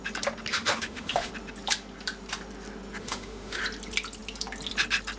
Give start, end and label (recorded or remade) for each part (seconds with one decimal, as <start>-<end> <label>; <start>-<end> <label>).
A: 0.0-0.5 recorded; 0.5-1.3 remade; 1.3-3.0 recorded; 3.0-3.6 remade; 3.6-5.2 recorded